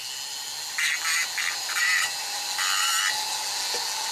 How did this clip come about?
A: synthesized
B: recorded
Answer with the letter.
B